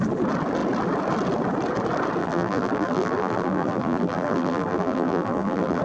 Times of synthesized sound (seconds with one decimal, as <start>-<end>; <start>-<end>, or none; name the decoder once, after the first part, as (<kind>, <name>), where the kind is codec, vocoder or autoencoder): 2.2-5.8 (vocoder, BigVGAN v2)